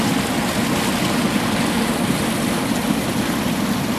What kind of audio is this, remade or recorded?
recorded